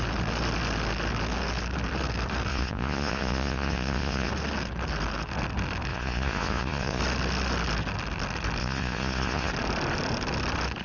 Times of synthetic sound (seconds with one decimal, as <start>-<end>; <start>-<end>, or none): 2.5-4.3; 5.9-7.0; 8.6-9.5